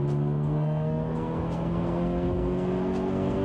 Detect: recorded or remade remade